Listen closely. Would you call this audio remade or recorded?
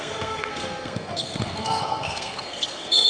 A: remade